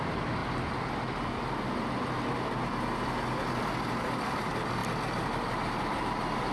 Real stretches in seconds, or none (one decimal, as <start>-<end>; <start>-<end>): 0.4-4.0